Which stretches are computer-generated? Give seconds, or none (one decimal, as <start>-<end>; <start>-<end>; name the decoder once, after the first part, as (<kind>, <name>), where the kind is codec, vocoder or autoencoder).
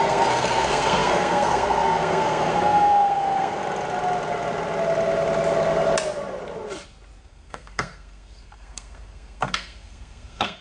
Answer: 0.0-3.6 (codec, SNAC); 7.2-10.6